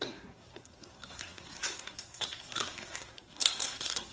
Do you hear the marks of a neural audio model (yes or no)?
yes